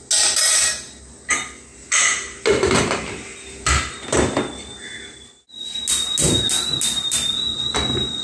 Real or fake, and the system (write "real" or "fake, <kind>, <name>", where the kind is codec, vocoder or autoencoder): real